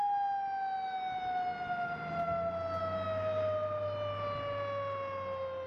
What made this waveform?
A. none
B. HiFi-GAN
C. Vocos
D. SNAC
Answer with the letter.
A